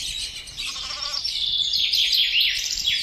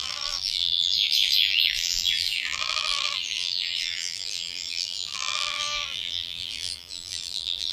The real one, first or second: first